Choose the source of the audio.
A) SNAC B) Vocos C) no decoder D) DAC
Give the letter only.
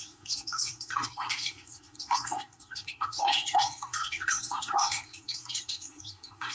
A